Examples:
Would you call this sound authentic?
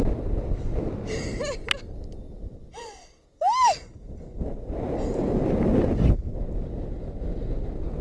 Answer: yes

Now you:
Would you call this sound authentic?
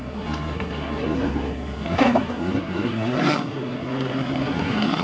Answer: no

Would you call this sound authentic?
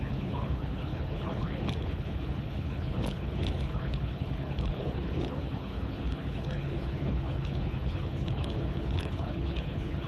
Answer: no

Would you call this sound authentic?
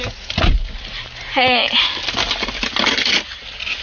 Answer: yes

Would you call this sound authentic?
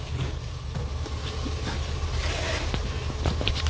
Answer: no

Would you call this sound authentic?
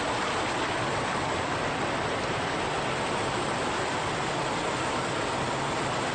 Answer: no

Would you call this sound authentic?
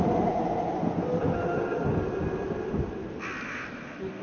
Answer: yes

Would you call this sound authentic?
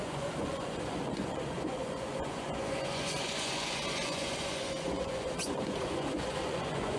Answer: no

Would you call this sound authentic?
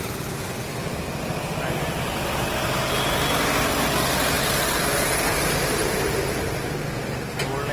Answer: yes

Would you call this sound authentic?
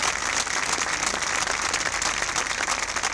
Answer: yes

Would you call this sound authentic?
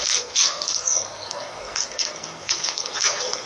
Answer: no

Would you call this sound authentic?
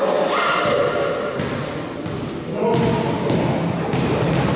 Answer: yes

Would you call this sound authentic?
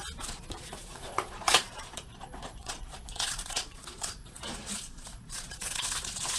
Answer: no